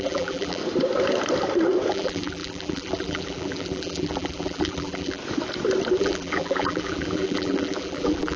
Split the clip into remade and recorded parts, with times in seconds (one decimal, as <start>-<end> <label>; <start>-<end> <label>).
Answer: 0.0-0.6 remade; 0.6-1.9 recorded; 1.9-5.2 remade; 5.2-5.9 recorded; 5.9-8.4 remade